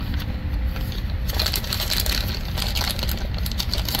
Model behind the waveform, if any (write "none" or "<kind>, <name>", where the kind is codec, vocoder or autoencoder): none